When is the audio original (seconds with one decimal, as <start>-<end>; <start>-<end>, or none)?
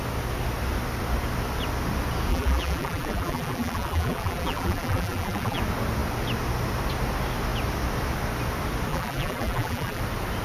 0.0-2.3; 5.6-8.9; 10.0-10.4